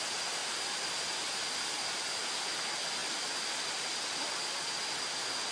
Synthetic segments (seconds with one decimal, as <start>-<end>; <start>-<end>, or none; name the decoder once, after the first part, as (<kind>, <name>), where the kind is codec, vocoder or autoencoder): none